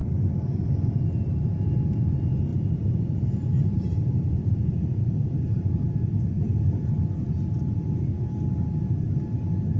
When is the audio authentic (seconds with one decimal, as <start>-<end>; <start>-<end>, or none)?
0.6-2.5; 5.8-9.8